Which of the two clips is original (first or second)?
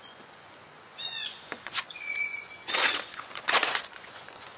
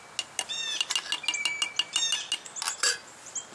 second